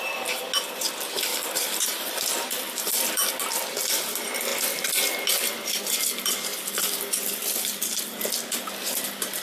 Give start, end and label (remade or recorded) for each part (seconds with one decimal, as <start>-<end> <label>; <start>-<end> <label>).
0.0-1.3 recorded; 1.3-3.3 remade; 3.3-6.5 recorded; 6.5-7.8 remade; 7.8-9.4 recorded